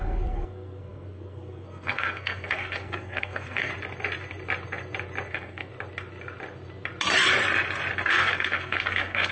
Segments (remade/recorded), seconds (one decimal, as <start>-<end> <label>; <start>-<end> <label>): 0.0-3.7 remade; 3.7-5.3 recorded; 5.3-5.7 remade; 5.7-8.1 recorded; 8.1-9.3 remade